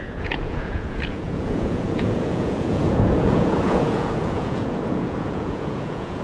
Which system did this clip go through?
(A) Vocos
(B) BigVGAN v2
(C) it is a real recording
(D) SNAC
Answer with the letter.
A